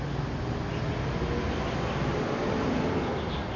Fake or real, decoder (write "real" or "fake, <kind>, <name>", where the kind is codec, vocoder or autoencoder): real